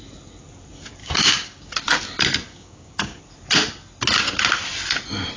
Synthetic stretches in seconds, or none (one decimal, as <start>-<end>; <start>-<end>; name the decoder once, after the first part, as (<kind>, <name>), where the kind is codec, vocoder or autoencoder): 1.0-1.7 (codec, DAC); 2.5-3.2